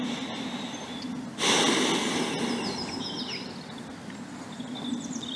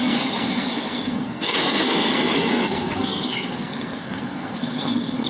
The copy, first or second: second